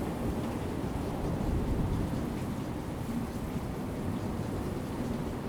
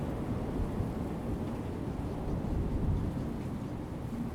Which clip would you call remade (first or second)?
first